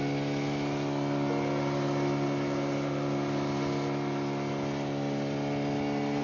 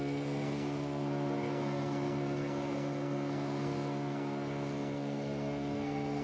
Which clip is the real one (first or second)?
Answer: first